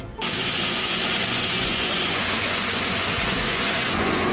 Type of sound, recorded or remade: remade